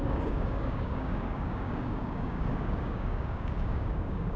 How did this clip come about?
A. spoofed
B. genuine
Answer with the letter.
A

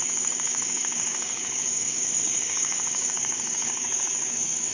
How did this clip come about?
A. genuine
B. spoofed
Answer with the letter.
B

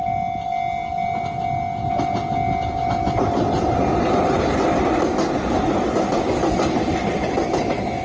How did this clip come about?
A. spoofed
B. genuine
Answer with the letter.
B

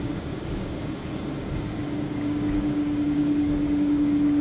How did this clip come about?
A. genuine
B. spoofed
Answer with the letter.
B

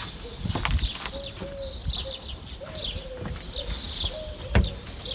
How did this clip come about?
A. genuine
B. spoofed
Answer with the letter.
A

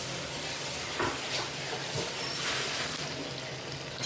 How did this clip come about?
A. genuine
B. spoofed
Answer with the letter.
A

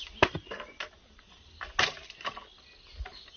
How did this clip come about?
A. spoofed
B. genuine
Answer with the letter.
B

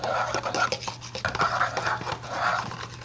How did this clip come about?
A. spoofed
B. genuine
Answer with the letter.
B